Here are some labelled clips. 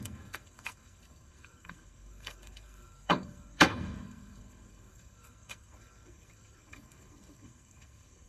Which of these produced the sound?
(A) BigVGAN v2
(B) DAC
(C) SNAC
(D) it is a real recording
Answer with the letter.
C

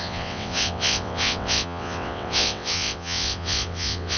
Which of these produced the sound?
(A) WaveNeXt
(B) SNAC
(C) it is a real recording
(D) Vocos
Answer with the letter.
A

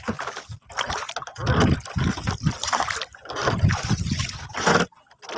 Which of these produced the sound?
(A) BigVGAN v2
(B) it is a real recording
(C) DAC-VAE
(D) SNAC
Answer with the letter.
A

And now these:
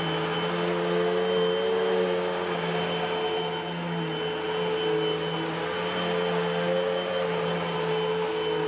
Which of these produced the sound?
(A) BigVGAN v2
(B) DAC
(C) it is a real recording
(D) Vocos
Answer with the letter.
C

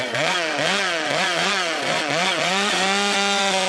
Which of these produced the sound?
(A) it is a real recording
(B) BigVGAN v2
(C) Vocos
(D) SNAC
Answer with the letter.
C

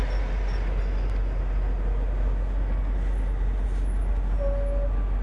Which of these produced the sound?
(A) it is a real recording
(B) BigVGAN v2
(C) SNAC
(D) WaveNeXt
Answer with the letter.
A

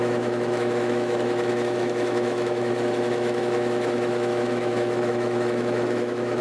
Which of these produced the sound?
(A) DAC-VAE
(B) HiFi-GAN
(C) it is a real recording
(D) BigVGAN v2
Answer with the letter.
A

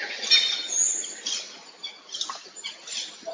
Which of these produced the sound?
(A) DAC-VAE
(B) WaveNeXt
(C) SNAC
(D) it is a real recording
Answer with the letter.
D